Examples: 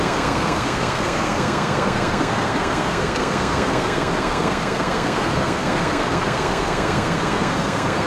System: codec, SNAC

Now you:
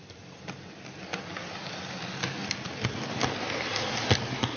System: none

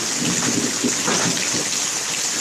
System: none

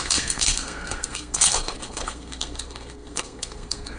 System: codec, SNAC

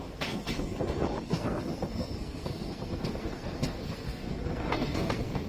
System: codec, SNAC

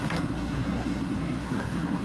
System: codec, SNAC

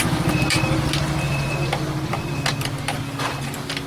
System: none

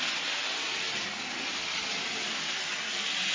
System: none